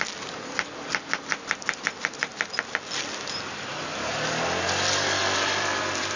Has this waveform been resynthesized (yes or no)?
no